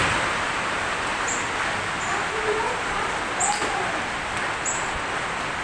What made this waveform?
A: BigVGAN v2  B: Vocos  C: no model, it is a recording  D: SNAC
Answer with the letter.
C